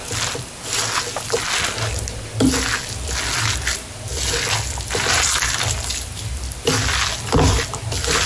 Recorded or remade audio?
recorded